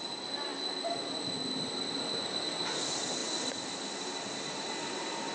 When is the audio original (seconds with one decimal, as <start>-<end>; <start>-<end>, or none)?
0.0-5.3